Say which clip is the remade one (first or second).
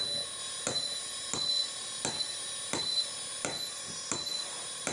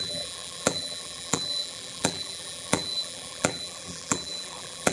second